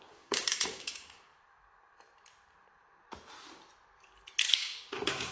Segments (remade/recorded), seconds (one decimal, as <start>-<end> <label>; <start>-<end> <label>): 0.0-1.3 remade; 1.3-4.5 recorded; 4.5-5.3 remade